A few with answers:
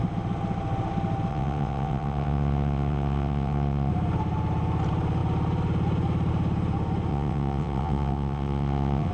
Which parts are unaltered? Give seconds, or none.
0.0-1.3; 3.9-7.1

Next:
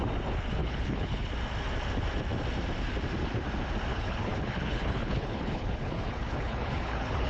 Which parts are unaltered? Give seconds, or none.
0.0-0.6; 1.3-3.9

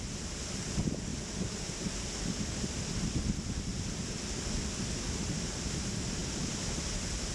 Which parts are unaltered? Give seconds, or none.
0.0-1.1; 1.9-7.3

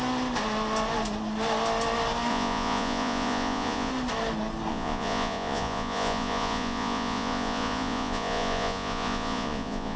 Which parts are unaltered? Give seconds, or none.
0.0-2.3; 3.9-4.7

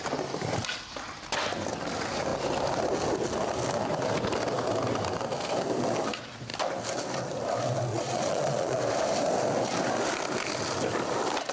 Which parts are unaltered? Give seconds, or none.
0.0-7.9; 8.8-11.5

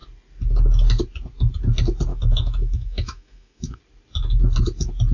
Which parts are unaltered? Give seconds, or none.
0.0-2.1; 3.8-5.1

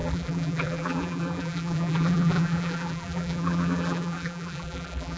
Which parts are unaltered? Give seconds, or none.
none

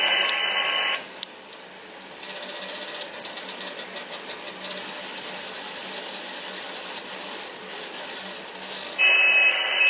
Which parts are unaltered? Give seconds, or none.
0.0-3.2; 4.2-9.9